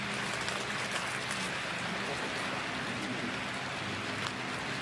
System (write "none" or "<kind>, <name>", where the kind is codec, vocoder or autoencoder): none